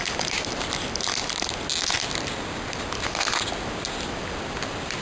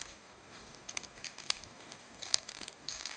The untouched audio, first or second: first